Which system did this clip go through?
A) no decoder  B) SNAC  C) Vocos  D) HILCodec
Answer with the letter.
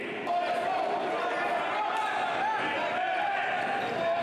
A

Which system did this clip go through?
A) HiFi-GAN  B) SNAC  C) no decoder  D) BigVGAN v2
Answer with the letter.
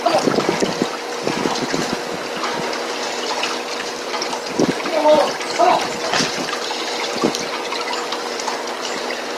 C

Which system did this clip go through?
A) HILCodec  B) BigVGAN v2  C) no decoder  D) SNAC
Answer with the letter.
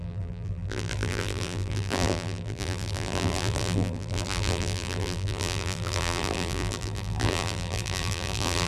B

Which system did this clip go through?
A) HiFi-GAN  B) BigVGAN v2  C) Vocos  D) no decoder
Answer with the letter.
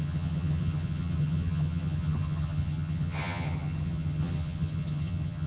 A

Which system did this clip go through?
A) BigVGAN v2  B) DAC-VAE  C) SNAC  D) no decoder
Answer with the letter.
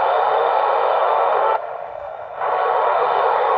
B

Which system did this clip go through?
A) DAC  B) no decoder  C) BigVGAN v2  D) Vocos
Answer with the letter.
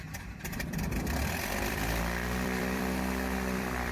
C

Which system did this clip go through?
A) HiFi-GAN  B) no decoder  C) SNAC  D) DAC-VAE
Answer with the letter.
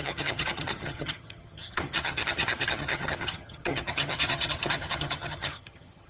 A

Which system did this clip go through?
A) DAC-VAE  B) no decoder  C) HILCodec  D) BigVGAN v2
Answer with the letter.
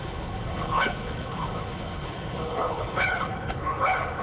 C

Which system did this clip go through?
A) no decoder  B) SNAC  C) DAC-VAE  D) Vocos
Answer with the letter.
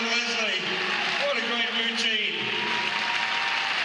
A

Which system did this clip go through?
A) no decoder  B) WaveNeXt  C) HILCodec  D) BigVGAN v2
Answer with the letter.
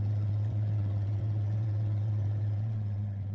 B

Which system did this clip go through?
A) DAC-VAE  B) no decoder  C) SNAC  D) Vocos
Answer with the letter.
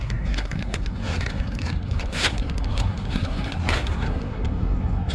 C